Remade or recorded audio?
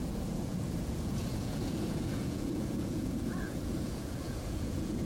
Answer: remade